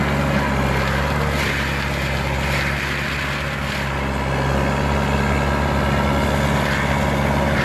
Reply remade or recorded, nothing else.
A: recorded